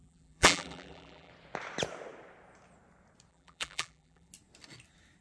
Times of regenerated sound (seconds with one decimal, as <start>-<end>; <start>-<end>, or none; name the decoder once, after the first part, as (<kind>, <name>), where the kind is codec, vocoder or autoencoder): 0.0-1.3 (vocoder, BigVGAN v2); 3.3-4.3

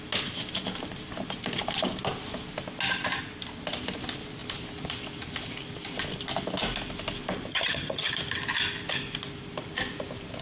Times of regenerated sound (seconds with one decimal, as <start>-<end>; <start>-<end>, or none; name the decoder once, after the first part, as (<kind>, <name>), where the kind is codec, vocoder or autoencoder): 7.5-8.1 (vocoder, HiFi-GAN)

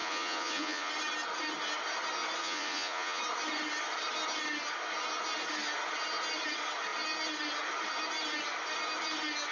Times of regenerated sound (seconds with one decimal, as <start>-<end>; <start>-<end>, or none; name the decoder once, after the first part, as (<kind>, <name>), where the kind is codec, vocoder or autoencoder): 0.0-0.9 (vocoder, Vocos); 2.4-3.2

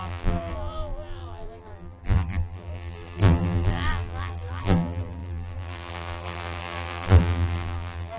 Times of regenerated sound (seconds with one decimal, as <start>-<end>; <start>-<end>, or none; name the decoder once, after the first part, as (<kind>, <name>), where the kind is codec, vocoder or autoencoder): 0.0-8.2 (vocoder, BigVGAN v2)

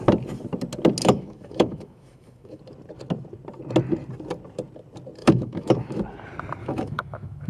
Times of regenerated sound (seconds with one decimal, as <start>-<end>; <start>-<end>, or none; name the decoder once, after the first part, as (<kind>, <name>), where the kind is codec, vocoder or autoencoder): 1.0-2.6 (autoencoder, DAC-VAE); 5.2-6.0; 6.6-7.5

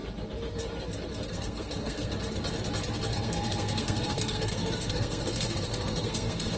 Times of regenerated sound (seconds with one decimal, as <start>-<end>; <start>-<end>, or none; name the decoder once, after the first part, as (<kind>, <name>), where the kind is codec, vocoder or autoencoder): 1.3-2.1 (codec, SNAC); 3.1-6.6

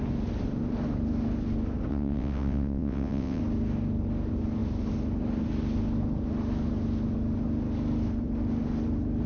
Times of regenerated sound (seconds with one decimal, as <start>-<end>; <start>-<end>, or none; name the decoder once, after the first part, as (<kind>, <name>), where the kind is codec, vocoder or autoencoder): 1.9-3.4 (vocoder, WaveNeXt)